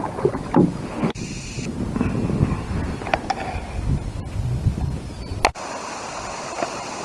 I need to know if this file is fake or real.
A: real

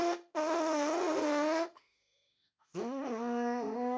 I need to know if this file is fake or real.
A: fake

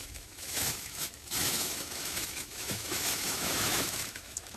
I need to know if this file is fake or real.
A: fake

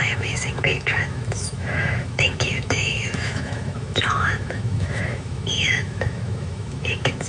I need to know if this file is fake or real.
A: fake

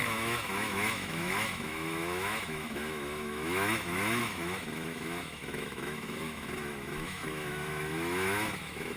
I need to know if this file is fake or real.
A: fake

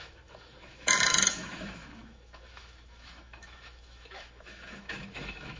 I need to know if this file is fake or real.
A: fake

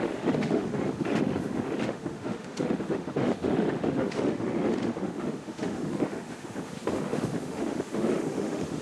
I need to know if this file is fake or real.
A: fake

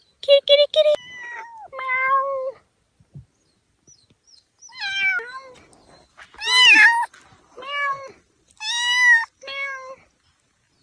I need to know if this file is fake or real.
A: real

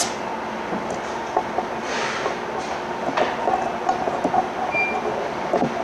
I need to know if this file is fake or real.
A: real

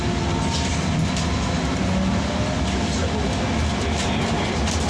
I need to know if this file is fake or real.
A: real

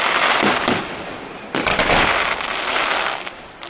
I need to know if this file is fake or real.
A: real